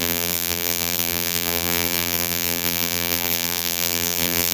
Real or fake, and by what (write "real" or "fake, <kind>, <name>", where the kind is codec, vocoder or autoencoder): fake, vocoder, BigVGAN v2